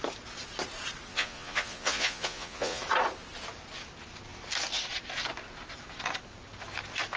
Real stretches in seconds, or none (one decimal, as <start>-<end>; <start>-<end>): 0.0-1.1; 2.8-7.2